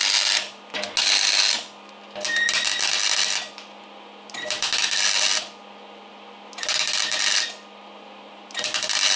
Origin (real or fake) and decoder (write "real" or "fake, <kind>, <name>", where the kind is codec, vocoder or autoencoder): real